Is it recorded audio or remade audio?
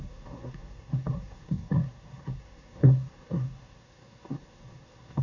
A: remade